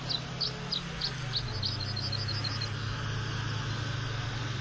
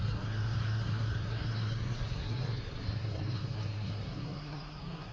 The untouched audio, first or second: first